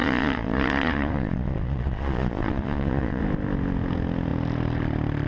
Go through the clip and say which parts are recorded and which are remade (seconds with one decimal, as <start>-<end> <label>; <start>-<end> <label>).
0.0-3.2 remade; 3.2-5.3 recorded